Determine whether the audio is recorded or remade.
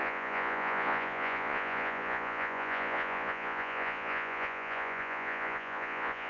remade